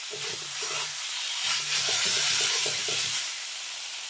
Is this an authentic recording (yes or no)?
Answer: no